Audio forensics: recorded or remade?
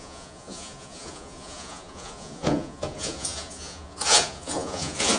remade